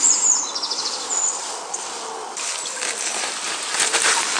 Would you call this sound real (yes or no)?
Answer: yes